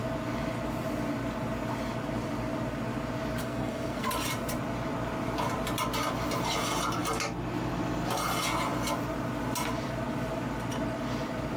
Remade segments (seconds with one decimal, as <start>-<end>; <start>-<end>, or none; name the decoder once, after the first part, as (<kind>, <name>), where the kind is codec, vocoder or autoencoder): 3.4-4.1 (codec, SNAC)